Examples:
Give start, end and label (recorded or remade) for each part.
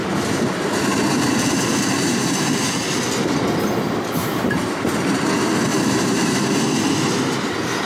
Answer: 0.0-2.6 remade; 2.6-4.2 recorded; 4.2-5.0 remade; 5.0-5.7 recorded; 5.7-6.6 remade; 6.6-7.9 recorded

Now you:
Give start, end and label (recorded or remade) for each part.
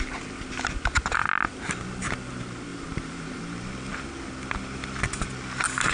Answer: 0.0-2.7 recorded; 2.7-3.4 remade; 3.4-5.9 recorded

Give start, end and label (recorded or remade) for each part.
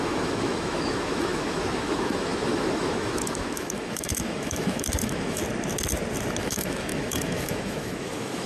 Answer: 0.0-5.4 remade; 5.4-6.4 recorded; 6.4-8.5 remade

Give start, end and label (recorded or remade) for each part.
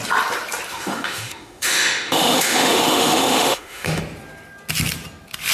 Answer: 0.0-0.7 recorded; 0.7-4.0 remade; 4.0-5.5 recorded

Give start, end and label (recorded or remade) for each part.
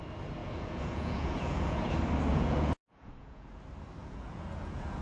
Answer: 0.0-0.4 recorded; 0.4-1.9 remade; 1.9-2.3 recorded; 2.3-3.6 remade; 3.6-4.0 recorded; 4.0-5.0 remade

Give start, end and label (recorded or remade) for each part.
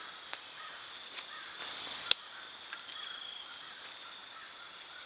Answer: 0.0-1.6 recorded; 1.6-2.1 remade; 2.1-5.1 recorded